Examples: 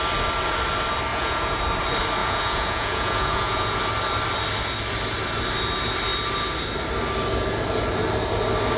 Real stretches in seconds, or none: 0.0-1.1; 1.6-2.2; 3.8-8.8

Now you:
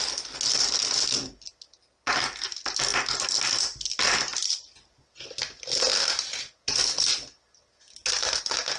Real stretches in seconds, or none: 0.0-8.8

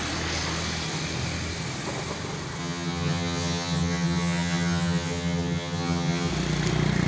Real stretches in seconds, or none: 0.0-2.6; 6.3-7.1

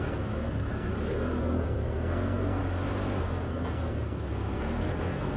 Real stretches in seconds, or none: 0.9-1.4; 2.6-3.2